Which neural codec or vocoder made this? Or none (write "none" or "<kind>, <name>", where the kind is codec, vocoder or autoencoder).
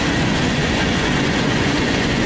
vocoder, Vocos